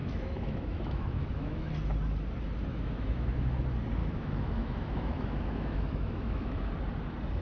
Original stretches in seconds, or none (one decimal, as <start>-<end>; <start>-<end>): 1.7-2.7; 3.6-4.0; 6.7-7.4